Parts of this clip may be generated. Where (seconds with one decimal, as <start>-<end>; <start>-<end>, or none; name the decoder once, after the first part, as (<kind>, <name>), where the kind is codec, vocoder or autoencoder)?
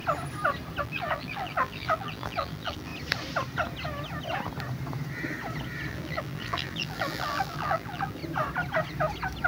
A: 0.8-2.9 (vocoder, BigVGAN v2); 5.9-8.2